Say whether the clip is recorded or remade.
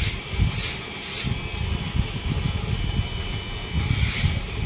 recorded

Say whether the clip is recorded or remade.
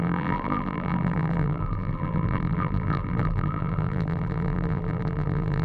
remade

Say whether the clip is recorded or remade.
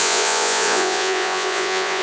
remade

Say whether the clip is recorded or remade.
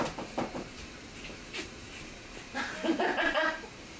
remade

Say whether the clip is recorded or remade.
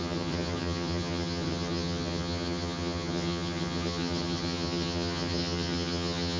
remade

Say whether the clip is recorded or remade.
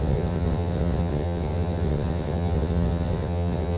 remade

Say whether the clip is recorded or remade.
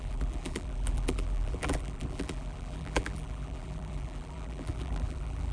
remade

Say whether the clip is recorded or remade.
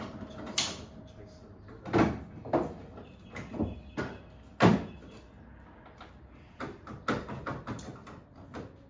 recorded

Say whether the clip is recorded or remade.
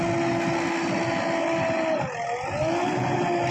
recorded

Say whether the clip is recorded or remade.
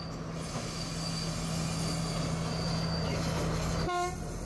recorded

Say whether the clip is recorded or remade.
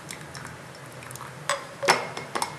recorded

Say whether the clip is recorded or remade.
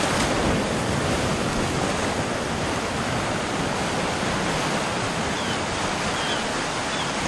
recorded